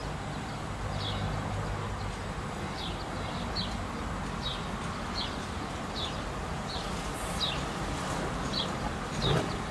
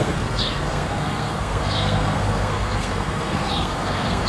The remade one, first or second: second